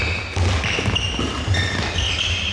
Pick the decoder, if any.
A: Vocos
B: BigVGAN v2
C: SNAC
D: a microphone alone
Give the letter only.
D